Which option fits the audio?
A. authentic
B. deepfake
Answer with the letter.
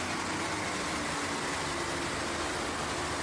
A